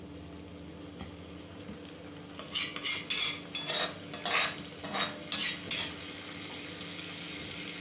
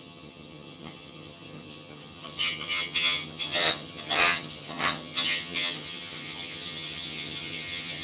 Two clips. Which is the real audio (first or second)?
first